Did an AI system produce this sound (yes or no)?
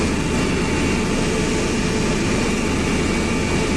no